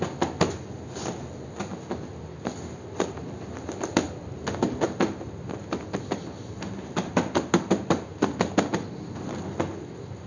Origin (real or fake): real